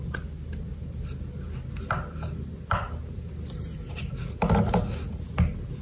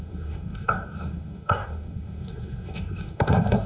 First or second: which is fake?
second